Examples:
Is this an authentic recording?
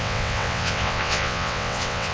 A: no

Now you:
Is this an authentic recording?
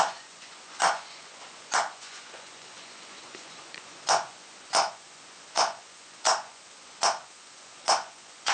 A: no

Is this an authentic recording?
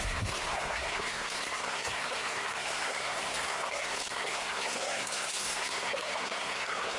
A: no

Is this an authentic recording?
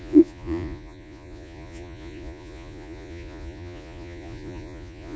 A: no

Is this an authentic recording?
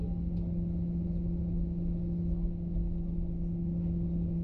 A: yes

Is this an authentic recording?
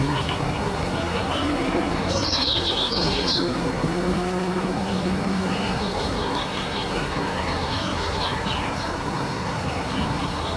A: no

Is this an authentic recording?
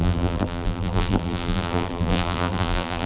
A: no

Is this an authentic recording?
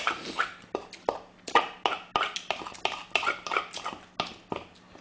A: yes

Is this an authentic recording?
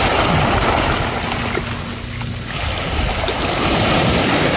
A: yes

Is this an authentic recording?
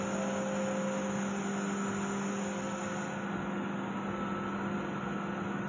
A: yes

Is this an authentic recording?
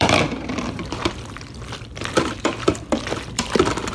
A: no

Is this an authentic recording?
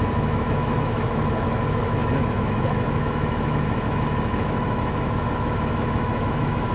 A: no